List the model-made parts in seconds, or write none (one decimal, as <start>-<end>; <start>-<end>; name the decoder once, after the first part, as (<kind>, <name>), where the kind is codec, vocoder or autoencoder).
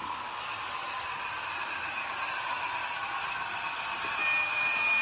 none